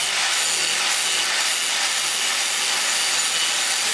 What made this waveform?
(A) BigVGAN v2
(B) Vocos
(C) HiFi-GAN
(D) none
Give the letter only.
D